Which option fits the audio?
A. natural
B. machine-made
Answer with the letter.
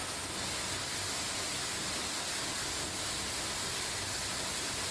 A